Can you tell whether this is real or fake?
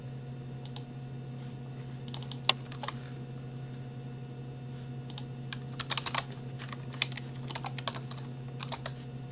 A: real